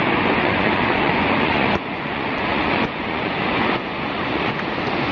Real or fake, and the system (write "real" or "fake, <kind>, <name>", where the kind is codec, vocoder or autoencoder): fake, vocoder, Vocos